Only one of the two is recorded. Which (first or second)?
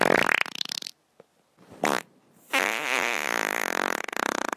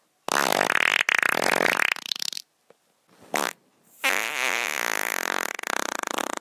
second